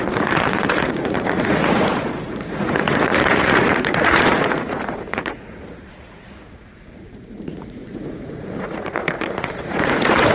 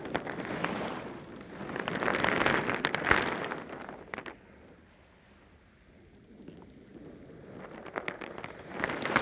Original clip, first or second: second